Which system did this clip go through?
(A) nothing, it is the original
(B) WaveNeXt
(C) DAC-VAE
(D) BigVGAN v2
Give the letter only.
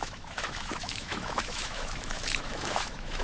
C